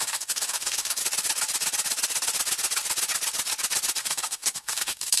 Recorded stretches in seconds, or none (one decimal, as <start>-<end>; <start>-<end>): 1.0-4.0